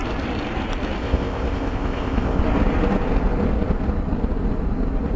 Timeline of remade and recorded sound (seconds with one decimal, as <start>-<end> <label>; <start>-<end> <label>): 0.0-1.0 recorded; 1.0-2.4 remade; 2.4-5.2 recorded